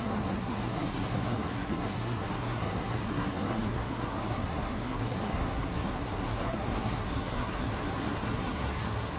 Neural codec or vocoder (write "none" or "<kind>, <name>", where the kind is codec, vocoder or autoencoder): codec, SNAC